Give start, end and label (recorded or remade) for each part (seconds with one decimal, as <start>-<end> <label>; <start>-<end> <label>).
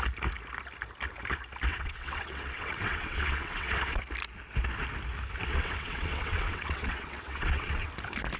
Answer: 0.0-1.7 recorded; 1.7-4.0 remade; 4.0-5.5 recorded; 5.5-7.9 remade; 7.9-8.4 recorded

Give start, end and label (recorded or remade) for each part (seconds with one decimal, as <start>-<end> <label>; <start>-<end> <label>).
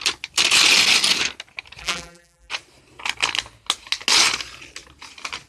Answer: 0.0-1.8 recorded; 1.8-2.5 remade; 2.5-5.5 recorded